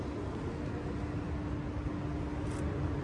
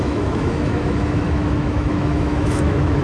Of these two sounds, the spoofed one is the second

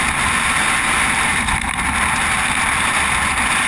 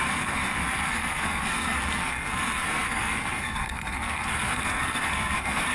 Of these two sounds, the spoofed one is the second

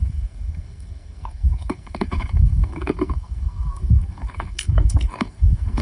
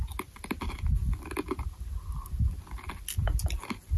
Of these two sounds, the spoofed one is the first